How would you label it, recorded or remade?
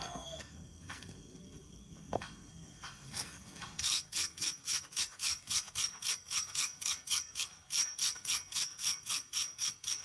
remade